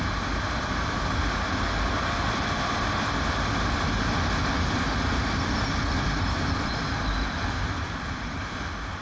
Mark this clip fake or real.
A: real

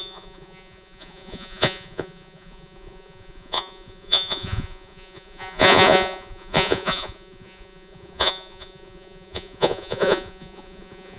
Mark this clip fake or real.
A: fake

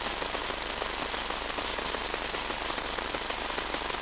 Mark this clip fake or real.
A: real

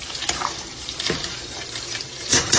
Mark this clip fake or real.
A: fake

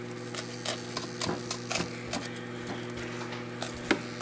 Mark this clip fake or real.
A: real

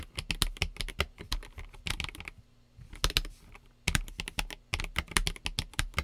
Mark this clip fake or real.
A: real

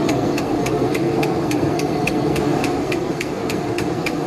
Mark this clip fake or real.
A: fake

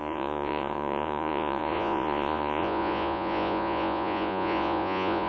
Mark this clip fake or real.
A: fake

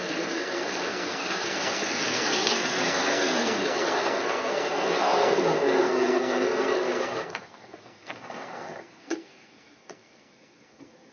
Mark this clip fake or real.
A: fake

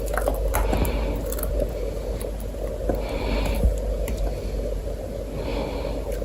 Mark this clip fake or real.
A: real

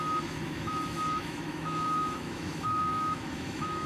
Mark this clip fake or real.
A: fake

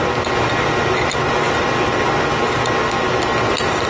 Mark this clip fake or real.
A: real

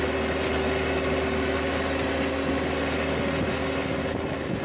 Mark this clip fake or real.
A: real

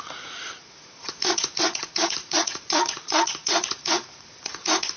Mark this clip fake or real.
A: fake